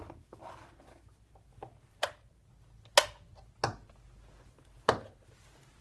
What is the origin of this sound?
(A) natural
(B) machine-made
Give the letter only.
A